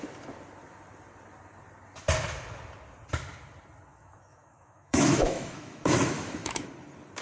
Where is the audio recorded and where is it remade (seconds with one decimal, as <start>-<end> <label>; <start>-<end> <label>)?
0.0-3.9 recorded; 3.9-6.7 remade; 6.7-7.2 recorded